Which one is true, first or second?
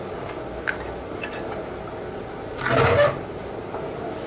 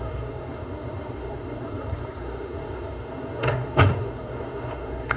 first